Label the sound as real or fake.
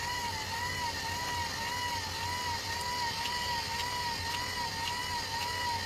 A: real